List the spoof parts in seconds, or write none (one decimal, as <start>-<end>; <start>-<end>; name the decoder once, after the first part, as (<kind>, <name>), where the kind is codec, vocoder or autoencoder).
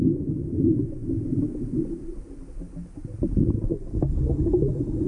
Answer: none